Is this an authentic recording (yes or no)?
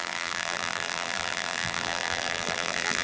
no